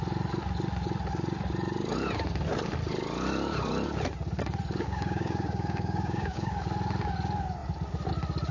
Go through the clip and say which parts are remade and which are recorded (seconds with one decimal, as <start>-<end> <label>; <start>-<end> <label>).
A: 0.0-4.8 recorded; 4.8-6.5 remade; 6.5-8.5 recorded